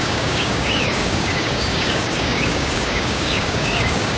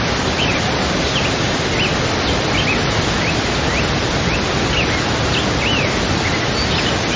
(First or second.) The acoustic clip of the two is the second